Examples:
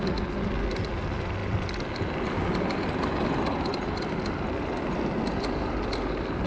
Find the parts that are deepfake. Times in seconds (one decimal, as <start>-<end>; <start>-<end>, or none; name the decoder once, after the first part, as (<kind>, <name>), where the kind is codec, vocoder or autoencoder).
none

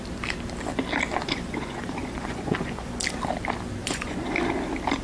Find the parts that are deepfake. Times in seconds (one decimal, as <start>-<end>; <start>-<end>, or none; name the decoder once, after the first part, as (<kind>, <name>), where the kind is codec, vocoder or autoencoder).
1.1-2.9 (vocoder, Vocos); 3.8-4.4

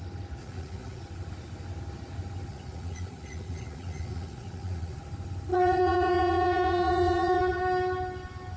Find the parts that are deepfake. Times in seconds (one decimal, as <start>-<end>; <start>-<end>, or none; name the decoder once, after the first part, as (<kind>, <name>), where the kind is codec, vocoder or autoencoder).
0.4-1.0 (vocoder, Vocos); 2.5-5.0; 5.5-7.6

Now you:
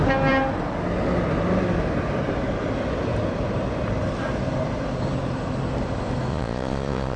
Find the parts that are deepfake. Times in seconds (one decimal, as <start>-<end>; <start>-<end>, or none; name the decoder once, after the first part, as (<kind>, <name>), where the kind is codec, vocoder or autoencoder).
6.3-7.2 (vocoder, Vocos)

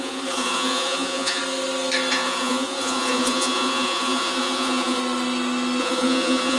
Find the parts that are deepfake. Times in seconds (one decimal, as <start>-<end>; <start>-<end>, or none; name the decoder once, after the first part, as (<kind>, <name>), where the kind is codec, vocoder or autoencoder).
0.0-1.4 (vocoder, Vocos); 2.1-5.0; 5.8-6.6